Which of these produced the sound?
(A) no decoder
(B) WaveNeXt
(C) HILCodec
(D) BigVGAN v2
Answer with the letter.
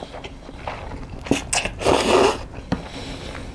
A